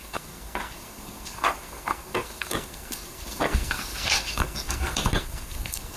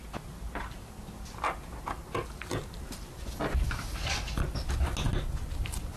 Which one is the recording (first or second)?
second